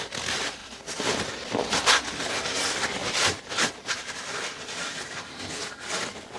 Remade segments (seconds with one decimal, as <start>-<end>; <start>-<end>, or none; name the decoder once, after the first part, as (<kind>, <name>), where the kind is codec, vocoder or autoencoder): 3.0-5.5 (vocoder, BigVGAN v2)